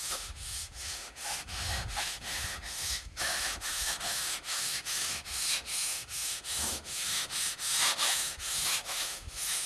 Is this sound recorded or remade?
remade